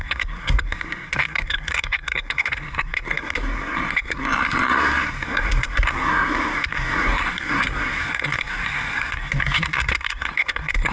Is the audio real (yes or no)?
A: no